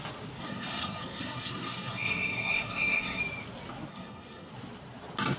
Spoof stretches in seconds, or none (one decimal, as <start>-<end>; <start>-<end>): 0.4-3.2; 3.9-4.5